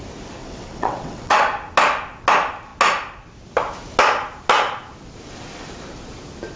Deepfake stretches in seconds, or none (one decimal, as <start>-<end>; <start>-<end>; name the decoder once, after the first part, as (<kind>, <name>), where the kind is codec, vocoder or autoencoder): 0.4-1.4 (vocoder, WaveNeXt)